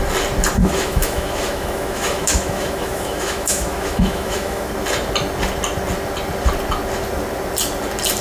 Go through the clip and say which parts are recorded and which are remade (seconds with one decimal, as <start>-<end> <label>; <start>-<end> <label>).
0.0-0.6 recorded; 0.6-4.7 remade; 4.7-8.2 recorded